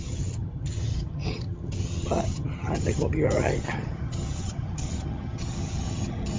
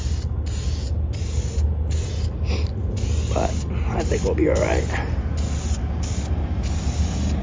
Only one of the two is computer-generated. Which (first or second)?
first